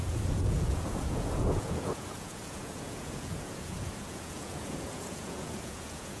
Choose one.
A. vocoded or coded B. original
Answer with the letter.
A